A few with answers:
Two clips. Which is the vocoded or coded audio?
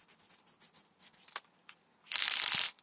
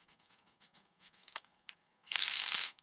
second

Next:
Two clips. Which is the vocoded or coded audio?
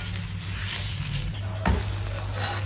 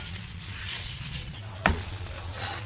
second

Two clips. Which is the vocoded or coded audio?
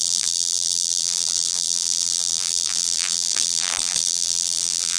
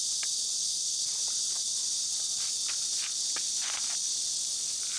first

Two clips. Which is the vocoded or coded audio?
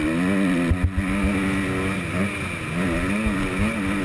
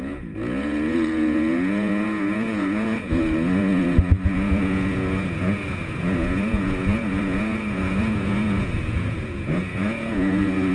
second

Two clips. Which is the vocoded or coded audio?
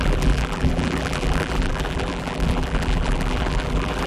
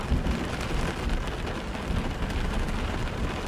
first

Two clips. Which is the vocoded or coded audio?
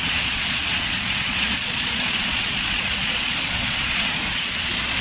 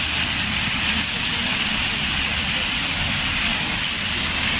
first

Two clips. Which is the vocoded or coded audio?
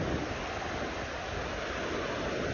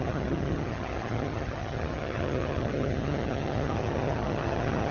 second